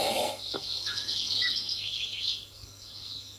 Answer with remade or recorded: remade